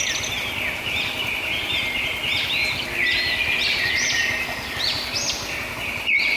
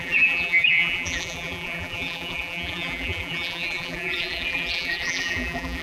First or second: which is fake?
second